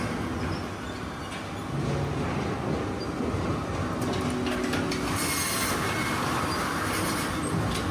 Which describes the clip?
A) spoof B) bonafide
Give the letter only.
B